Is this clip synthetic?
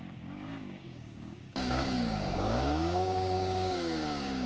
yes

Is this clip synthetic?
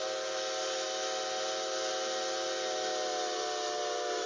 no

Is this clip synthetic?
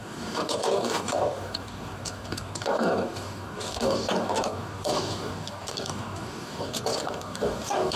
yes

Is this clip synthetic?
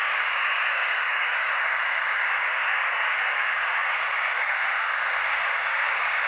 yes